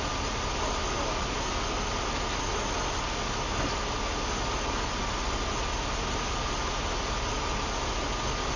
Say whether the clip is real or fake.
real